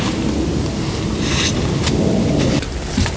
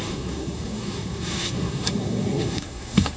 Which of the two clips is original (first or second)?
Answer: first